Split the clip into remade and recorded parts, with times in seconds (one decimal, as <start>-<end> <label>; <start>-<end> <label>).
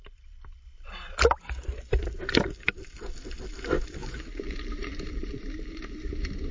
0.0-1.9 recorded; 1.9-2.5 remade; 2.5-4.0 recorded; 4.0-6.1 remade; 6.1-6.5 recorded